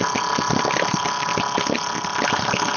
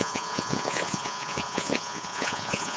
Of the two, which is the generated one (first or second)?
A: second